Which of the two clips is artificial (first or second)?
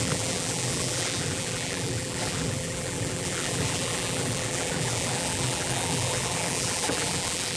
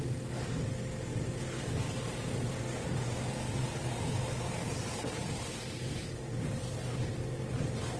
first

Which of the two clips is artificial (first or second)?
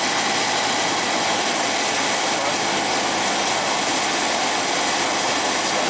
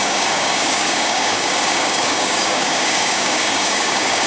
second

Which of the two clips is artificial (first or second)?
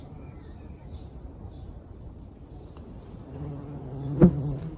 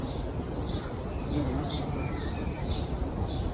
second